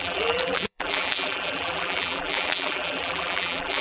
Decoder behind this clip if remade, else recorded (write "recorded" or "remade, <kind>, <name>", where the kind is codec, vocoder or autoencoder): remade, vocoder, BigVGAN v2